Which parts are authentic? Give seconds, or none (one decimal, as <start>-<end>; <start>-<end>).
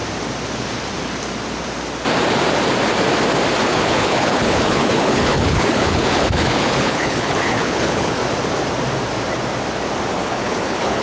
0.0-3.6; 8.2-10.1